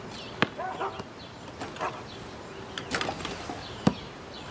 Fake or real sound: real